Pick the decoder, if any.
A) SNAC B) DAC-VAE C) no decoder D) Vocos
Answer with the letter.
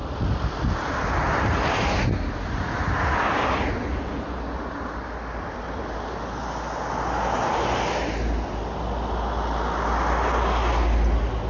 C